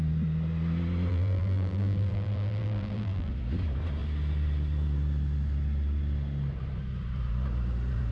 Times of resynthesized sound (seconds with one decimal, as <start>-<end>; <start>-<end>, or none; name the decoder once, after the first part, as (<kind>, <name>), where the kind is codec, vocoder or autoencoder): 1.1-3.3 (vocoder, BigVGAN v2)